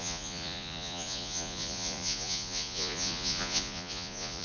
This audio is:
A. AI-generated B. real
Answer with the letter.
A